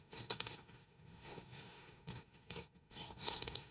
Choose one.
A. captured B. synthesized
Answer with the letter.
B